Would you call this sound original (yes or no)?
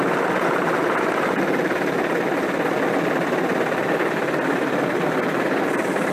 yes